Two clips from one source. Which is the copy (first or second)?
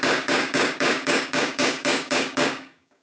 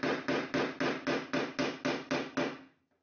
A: first